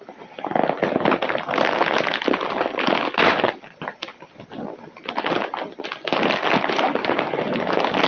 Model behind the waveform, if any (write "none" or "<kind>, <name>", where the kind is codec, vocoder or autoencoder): none